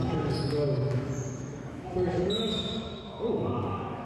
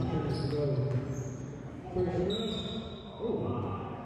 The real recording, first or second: second